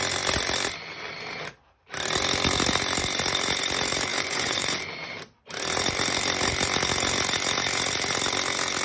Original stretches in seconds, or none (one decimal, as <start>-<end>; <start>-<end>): 0.0-4.1; 4.8-8.8